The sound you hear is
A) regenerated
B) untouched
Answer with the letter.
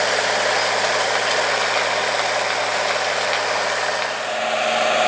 B